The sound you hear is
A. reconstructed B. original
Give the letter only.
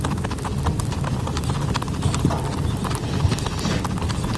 B